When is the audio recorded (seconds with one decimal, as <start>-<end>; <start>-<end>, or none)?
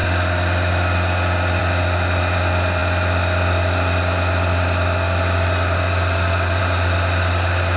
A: 0.0-7.8